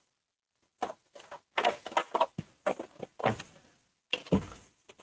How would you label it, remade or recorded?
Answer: recorded